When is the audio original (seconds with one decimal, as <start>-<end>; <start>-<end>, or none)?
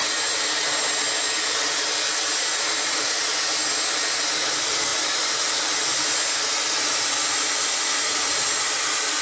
0.0-9.2